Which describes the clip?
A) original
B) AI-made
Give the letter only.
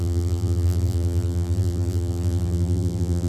B